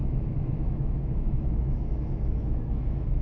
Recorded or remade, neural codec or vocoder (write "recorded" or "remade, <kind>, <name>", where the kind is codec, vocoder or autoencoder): remade, autoencoder, DAC-VAE